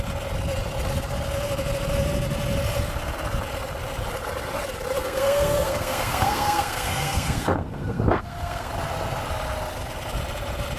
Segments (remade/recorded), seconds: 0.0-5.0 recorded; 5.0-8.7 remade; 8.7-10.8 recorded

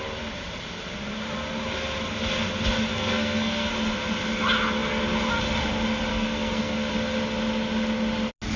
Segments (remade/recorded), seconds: 0.0-2.9 recorded; 2.9-3.7 remade; 3.7-6.1 recorded; 6.1-6.9 remade; 6.9-8.6 recorded

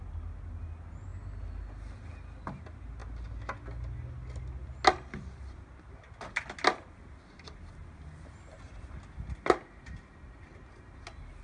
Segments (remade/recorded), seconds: 0.0-11.4 recorded